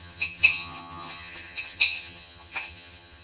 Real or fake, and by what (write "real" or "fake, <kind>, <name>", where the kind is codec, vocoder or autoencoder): fake, vocoder, HiFi-GAN